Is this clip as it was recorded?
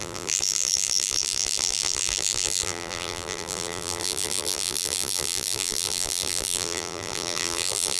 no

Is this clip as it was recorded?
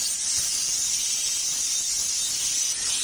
yes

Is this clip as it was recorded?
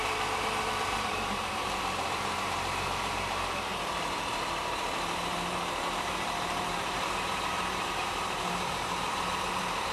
no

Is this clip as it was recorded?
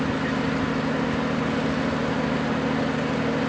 yes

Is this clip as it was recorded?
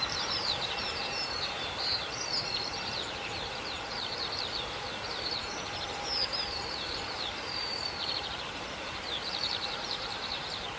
no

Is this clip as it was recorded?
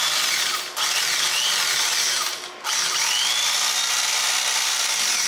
yes